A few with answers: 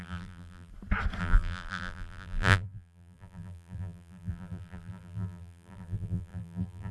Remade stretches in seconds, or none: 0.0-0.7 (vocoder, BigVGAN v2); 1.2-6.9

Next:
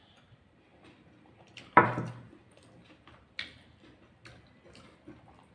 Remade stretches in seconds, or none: 0.7-3.2 (vocoder, BigVGAN v2)